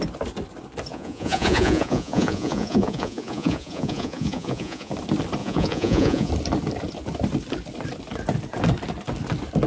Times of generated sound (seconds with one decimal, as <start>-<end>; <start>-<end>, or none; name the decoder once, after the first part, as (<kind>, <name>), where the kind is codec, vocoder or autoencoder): 0.9-4.9 (vocoder, Vocos); 5.4-6.3